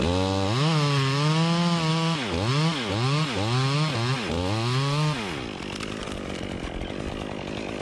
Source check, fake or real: real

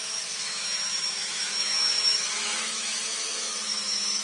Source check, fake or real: fake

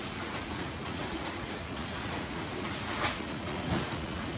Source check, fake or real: fake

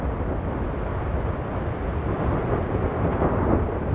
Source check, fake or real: real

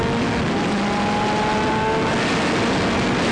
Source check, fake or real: real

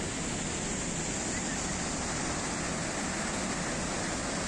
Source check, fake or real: real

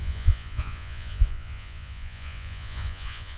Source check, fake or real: fake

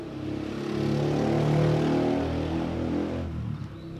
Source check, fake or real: real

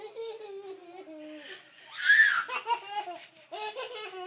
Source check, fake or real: real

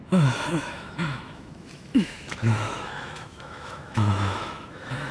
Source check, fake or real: fake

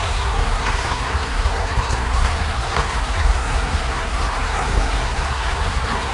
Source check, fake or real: fake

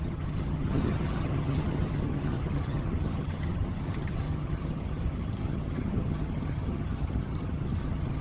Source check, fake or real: fake